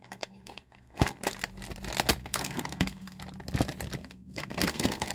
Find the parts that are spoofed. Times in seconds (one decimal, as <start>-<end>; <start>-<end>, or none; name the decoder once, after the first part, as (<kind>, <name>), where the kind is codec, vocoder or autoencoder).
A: 0.0-1.2 (codec, SNAC); 2.2-3.2; 4.0-5.1